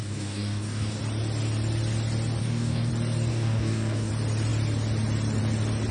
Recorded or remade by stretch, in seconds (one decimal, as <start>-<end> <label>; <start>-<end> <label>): 0.0-1.0 remade; 1.0-2.4 recorded; 2.4-2.9 remade; 2.9-3.3 recorded; 3.3-4.1 remade; 4.1-5.9 recorded